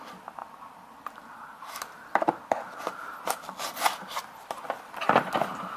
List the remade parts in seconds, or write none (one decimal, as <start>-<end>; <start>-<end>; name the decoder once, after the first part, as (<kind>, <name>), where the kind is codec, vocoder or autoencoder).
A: none